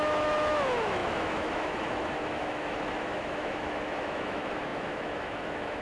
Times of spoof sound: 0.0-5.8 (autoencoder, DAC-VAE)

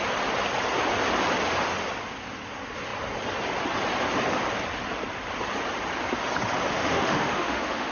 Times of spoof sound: 6.8-7.9 (autoencoder, DAC-VAE)